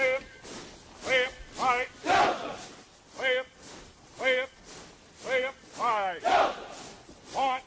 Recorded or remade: recorded